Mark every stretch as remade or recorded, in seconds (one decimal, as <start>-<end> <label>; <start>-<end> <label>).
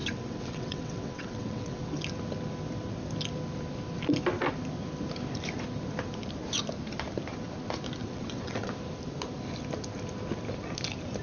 0.0-2.0 remade; 2.0-8.0 recorded; 8.0-8.7 remade; 8.7-11.2 recorded